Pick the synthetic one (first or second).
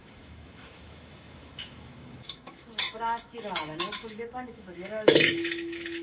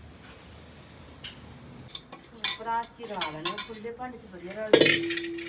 first